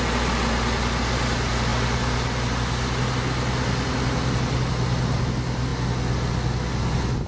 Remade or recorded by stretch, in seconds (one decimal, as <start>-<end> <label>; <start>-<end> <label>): 0.0-7.3 recorded